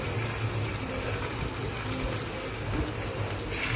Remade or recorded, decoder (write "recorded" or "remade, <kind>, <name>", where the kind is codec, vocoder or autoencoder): recorded